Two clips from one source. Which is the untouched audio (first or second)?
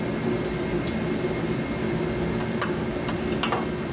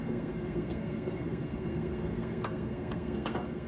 first